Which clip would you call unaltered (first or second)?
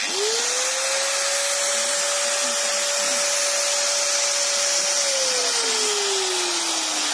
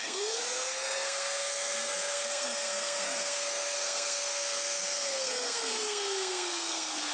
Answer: first